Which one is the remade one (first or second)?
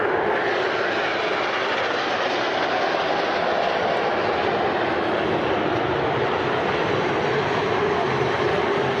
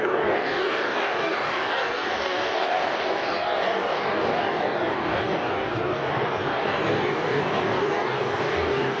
second